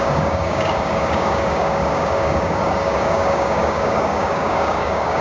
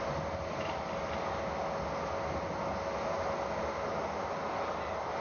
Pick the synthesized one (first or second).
first